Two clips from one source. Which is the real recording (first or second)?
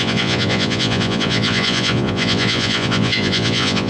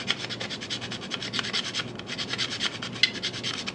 second